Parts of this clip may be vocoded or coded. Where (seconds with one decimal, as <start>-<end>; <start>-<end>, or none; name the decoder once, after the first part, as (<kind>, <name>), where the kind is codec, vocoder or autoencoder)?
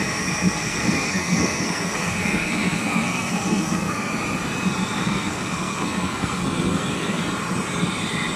0.0-4.1 (codec, SNAC); 5.0-7.2